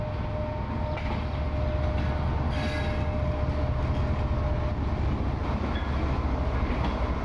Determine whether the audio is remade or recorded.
recorded